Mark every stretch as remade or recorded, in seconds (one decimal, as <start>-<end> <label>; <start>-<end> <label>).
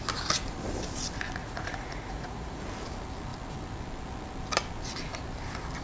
0.0-1.4 recorded; 1.4-2.6 remade; 2.6-5.8 recorded